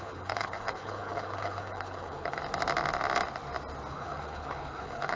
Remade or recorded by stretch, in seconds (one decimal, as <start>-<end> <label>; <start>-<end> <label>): 0.0-2.4 remade; 2.4-3.9 recorded; 3.9-5.2 remade